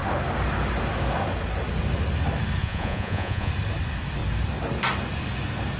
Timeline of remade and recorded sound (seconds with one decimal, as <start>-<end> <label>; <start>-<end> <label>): 0.0-2.6 recorded; 2.6-3.5 remade; 3.5-5.8 recorded